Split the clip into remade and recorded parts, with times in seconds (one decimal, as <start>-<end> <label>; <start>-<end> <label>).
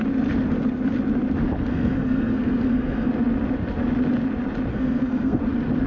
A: 0.0-1.7 recorded; 1.7-3.1 remade; 3.1-4.7 recorded; 4.7-5.4 remade; 5.4-5.9 recorded